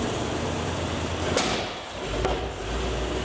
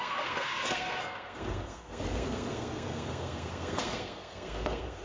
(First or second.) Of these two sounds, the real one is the first